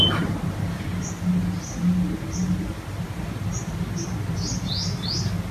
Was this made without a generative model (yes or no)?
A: yes